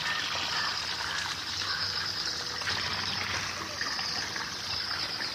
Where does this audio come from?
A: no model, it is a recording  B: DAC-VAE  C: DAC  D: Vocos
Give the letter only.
A